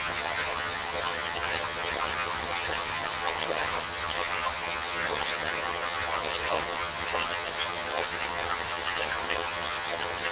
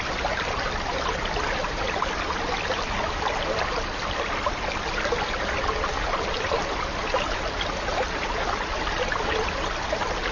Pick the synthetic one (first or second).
first